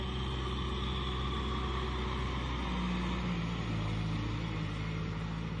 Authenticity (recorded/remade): recorded